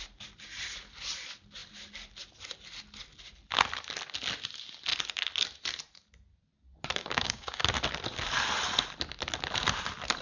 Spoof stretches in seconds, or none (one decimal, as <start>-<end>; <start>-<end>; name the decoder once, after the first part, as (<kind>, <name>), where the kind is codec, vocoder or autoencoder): 7.0-7.6 (codec, DAC)